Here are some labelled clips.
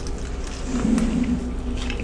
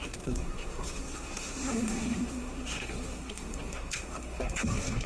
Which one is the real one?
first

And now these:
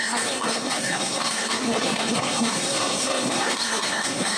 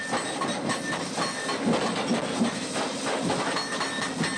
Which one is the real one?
second